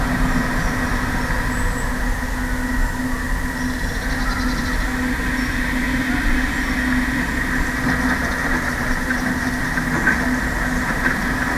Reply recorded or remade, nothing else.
recorded